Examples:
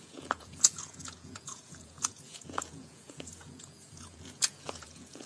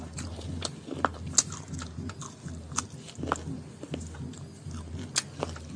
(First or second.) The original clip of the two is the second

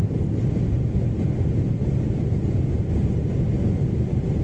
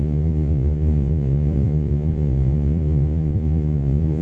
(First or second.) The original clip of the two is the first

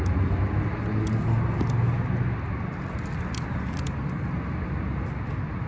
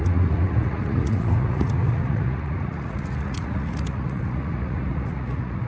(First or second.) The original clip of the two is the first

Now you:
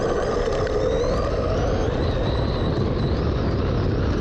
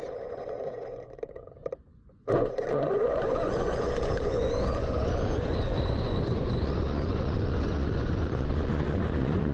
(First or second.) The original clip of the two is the first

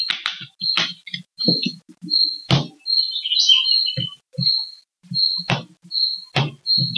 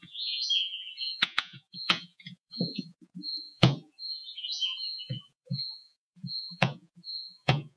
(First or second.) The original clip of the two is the first